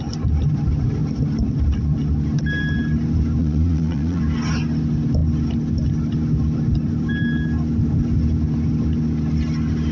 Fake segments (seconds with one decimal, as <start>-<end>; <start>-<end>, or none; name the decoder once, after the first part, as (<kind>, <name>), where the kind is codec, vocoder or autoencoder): 3.4-4.2 (vocoder, Vocos)